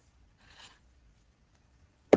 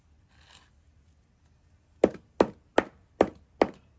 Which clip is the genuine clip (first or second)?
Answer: second